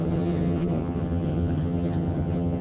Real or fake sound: fake